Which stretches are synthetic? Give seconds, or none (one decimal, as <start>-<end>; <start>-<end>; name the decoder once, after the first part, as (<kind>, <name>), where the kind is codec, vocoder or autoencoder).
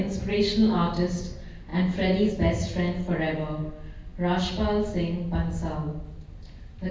none